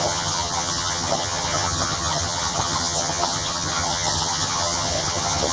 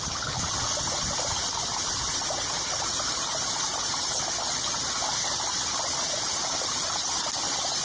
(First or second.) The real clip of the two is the second